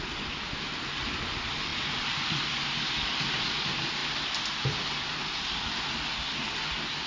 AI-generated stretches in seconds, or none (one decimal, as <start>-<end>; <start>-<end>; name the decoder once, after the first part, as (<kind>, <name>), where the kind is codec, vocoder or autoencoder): 1.7-2.9 (vocoder, BigVGAN v2); 4.0-5.2